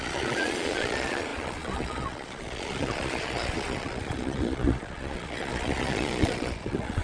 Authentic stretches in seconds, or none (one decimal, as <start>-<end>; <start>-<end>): none